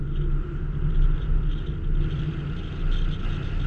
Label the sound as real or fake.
real